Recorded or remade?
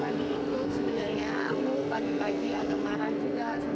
remade